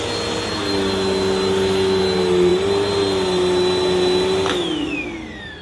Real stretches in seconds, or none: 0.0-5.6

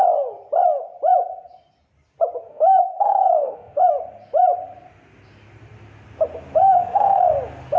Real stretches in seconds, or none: 0.0-2.5; 3.9-6.6; 7.3-7.8

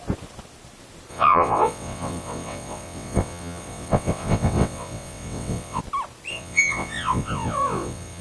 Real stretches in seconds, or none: 0.0-1.1; 5.8-6.3

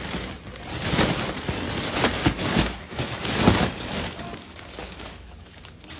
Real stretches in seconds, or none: 0.0-2.2